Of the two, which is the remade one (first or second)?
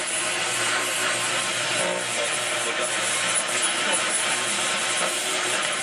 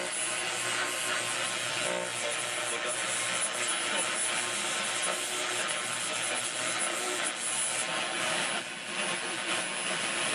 first